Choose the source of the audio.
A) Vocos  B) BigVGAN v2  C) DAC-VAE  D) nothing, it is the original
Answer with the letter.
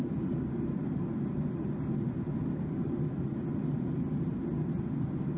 D